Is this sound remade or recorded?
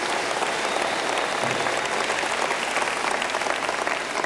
recorded